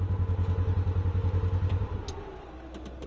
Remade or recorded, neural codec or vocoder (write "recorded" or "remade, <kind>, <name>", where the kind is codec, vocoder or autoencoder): recorded